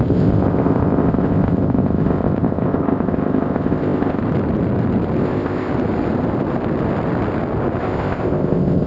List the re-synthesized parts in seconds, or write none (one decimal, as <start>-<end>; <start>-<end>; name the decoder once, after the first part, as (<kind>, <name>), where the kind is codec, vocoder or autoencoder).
0.0-4.2 (codec, ZipCodec); 5.2-5.7; 7.8-8.9